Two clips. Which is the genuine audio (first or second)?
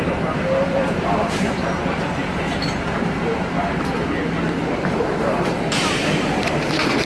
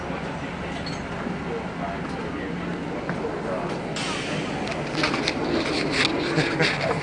second